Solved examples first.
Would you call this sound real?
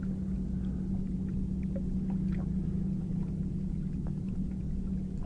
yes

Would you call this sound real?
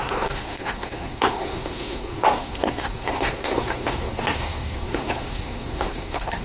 no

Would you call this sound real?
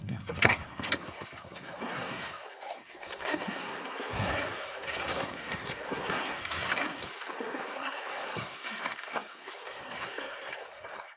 no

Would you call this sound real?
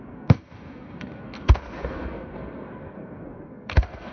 no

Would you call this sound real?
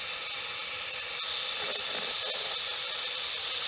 yes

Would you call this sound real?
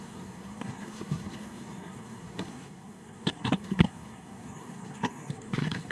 no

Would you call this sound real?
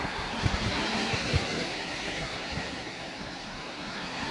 no